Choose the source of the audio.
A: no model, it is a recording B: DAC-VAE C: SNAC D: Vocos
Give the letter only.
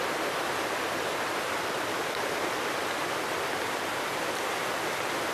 A